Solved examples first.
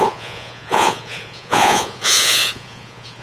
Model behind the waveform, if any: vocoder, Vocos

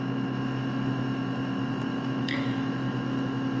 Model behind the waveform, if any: autoencoder, DAC-VAE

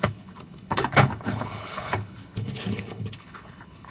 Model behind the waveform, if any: codec, HILCodec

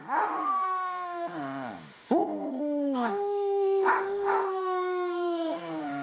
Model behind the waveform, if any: autoencoder, DAC-VAE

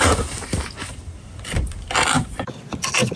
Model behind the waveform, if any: none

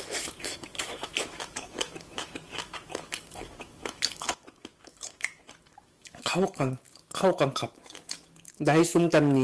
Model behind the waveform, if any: autoencoder, DAC-VAE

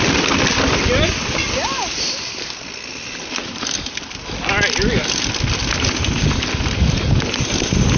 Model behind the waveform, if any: none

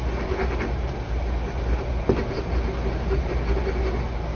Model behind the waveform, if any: none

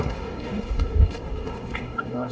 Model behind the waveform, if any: codec, SNAC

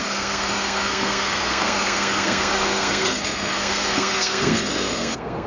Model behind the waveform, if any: codec, SNAC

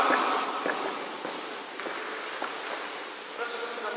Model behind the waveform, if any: none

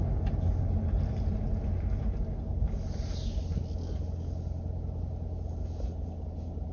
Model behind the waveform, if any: none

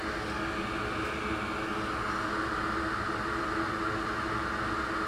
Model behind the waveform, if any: none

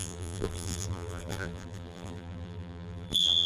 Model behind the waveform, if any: vocoder, BigVGAN v2